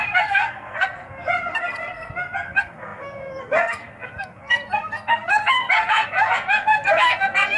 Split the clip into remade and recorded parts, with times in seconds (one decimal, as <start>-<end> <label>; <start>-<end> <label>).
0.0-7.6 remade